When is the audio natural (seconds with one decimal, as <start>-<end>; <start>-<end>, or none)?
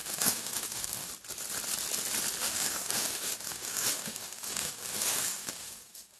1.1-2.4